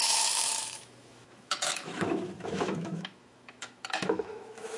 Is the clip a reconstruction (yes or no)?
yes